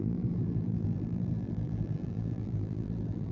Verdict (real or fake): fake